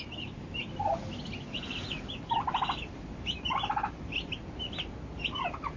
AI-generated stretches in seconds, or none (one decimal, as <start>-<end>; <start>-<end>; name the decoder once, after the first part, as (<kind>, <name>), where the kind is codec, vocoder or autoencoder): none